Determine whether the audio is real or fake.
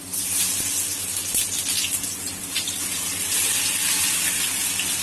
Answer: real